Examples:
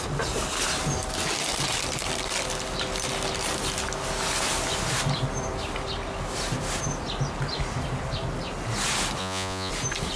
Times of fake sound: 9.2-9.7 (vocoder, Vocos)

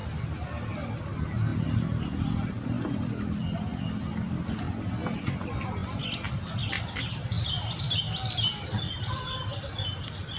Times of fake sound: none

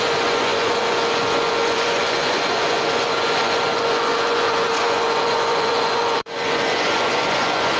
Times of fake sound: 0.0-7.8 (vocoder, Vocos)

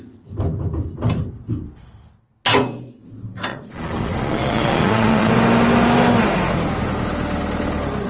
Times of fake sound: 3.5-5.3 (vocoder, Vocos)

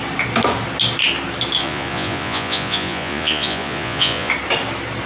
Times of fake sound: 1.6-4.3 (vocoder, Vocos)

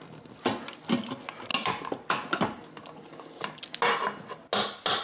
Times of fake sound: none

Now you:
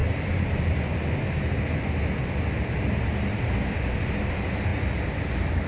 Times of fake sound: none